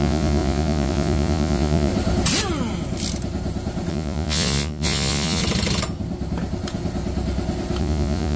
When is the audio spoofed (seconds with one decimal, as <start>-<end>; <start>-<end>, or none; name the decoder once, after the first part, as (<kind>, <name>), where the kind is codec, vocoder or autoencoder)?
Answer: 0.0-1.9 (vocoder, Vocos); 3.9-5.4; 7.8-8.4